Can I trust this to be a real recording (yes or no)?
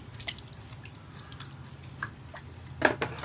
yes